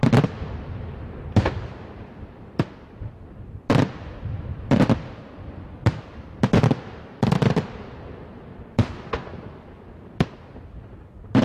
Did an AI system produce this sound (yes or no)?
yes